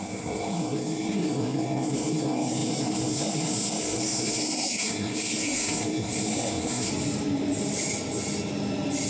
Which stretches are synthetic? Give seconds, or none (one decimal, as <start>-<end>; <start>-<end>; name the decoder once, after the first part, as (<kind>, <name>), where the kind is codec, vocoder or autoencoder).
0.0-6.9 (codec, SNAC)